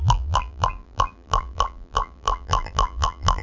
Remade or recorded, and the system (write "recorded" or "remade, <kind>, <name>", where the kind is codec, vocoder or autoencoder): remade, vocoder, BigVGAN v2